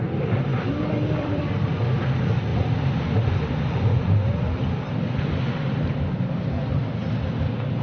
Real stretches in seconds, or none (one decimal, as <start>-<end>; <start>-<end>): 0.0-0.5; 1.4-7.8